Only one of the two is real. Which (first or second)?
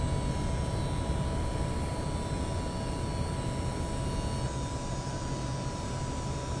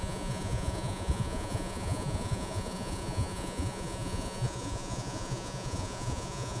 first